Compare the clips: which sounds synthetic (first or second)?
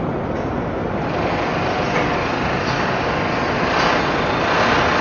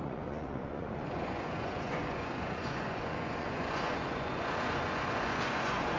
second